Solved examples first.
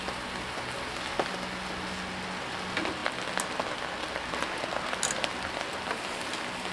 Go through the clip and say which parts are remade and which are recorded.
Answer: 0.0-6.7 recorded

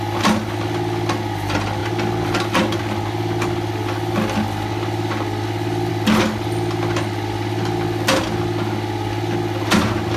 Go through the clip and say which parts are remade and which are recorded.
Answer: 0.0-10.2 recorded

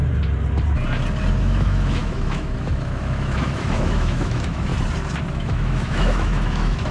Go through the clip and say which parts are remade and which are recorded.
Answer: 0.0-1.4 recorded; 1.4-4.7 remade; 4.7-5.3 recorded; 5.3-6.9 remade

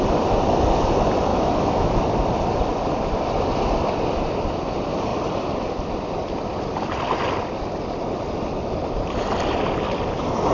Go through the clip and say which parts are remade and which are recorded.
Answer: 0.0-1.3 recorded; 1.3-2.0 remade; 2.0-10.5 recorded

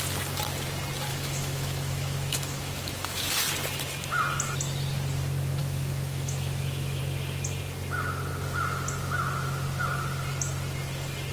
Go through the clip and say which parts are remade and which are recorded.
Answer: 0.0-1.1 recorded; 1.1-3.3 remade; 3.3-5.6 recorded; 5.6-7.0 remade; 7.0-11.3 recorded

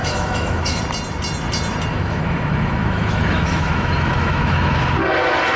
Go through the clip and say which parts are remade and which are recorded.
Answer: 0.0-0.8 remade; 0.8-1.9 recorded; 1.9-4.8 remade; 4.8-5.6 recorded

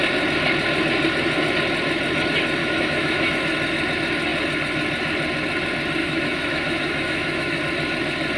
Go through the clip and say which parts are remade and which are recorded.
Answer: 0.0-2.6 recorded; 2.6-3.3 remade; 3.3-6.0 recorded; 6.0-7.6 remade; 7.6-8.4 recorded